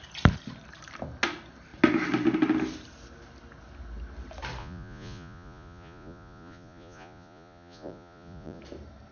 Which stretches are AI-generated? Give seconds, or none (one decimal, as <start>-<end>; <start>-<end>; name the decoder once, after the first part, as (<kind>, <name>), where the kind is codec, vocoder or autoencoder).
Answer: 4.6-8.6 (vocoder, Vocos)